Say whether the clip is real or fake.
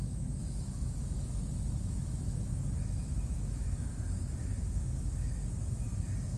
fake